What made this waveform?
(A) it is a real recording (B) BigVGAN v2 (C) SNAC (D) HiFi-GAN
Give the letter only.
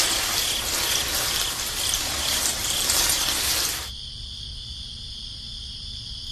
B